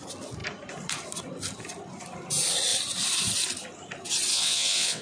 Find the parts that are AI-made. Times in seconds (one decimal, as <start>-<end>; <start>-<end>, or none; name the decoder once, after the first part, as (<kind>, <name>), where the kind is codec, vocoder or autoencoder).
4.3-5.0 (vocoder, WaveNeXt)